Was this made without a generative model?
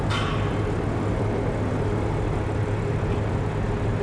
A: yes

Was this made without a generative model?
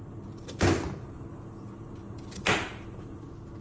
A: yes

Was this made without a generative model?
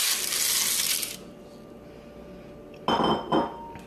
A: yes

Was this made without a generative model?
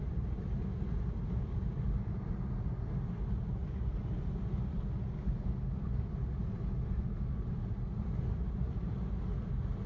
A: yes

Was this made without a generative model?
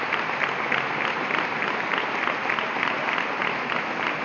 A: yes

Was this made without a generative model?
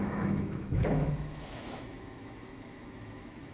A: no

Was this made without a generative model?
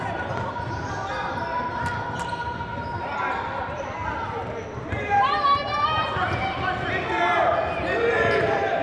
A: yes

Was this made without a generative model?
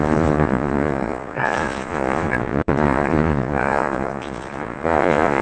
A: no